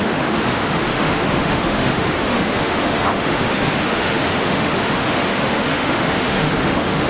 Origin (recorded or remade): remade